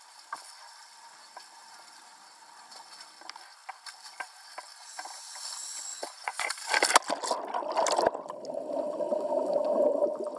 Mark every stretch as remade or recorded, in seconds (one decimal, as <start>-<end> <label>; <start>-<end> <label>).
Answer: 0.0-5.9 recorded; 5.9-6.5 remade; 6.5-10.4 recorded